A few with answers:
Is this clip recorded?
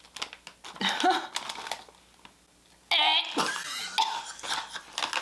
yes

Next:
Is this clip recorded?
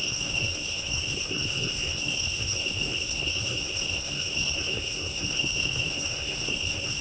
no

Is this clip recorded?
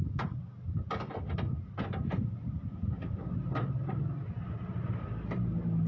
yes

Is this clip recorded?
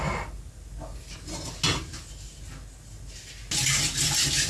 yes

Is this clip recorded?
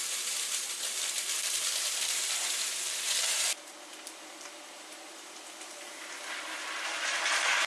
no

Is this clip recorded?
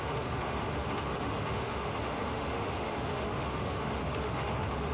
no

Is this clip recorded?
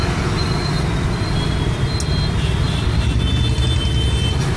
yes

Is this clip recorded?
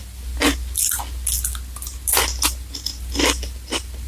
yes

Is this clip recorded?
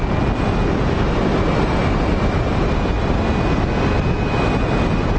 yes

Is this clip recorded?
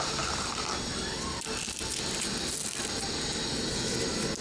yes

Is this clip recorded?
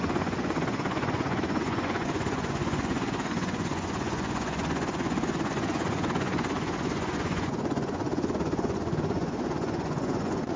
no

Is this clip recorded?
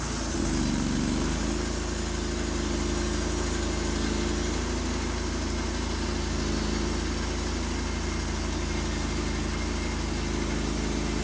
yes